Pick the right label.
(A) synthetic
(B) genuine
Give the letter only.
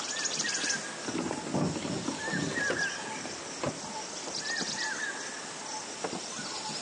B